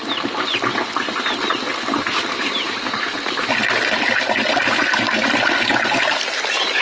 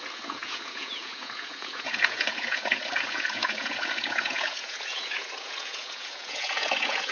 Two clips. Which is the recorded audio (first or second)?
first